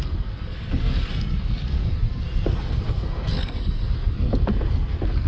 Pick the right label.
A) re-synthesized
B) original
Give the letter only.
A